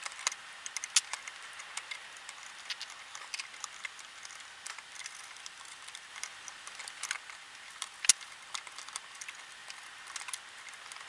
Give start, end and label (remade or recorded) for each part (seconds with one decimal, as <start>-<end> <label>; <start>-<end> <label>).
0.0-11.1 recorded

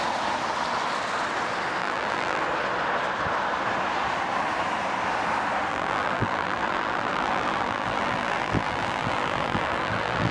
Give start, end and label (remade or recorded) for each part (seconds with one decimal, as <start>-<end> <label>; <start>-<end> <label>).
0.0-1.8 recorded; 1.8-2.4 remade; 2.4-5.7 recorded; 5.7-10.3 remade

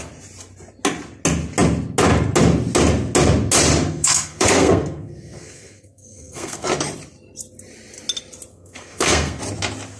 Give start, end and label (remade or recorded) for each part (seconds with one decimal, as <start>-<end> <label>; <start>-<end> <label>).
0.0-3.9 recorded; 3.9-6.7 remade; 6.7-8.5 recorded; 8.5-9.4 remade; 9.4-10.0 recorded